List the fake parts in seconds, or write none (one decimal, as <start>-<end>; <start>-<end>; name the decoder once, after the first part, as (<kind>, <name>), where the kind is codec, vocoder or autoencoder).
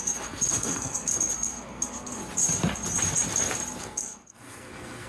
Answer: 0.0-2.2 (codec, SNAC); 3.8-5.1